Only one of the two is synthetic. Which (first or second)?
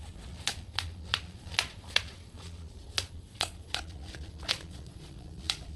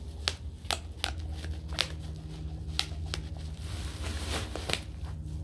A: first